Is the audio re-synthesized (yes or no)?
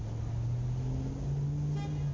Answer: no